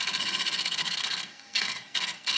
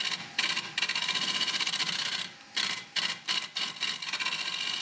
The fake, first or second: first